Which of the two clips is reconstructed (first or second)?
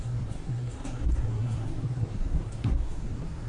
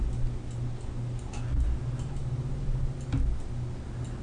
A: first